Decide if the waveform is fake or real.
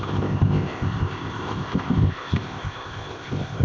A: fake